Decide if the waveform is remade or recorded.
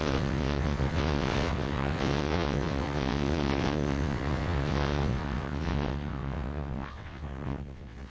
remade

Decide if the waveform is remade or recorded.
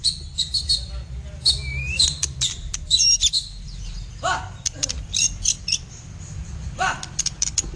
remade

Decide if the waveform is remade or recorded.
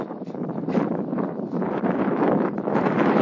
remade